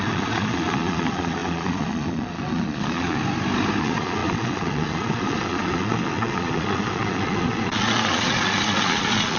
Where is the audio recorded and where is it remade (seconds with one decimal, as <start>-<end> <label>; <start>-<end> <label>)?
0.0-3.2 remade; 3.2-3.8 recorded; 3.8-9.4 remade